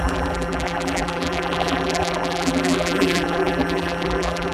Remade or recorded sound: remade